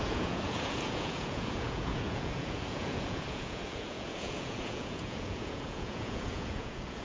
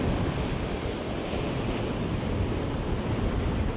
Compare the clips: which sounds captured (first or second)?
second